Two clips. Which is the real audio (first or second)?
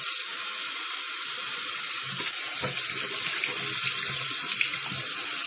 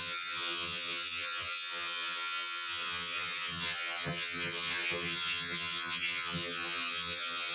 first